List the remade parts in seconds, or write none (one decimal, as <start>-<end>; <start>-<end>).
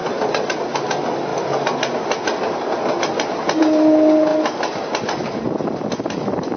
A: none